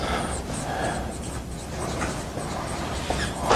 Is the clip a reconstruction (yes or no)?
no